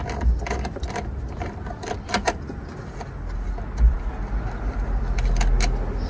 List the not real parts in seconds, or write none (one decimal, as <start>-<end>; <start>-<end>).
none